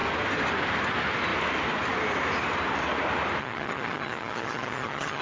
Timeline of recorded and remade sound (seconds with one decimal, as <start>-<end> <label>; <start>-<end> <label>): 0.0-3.4 recorded; 3.4-5.2 remade